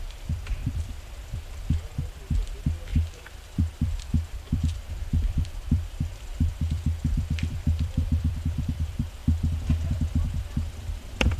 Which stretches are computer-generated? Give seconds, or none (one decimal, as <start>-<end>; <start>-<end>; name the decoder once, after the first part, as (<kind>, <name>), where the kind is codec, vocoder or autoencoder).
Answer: 0.0-9.2 (vocoder, BigVGAN v2); 9.9-11.4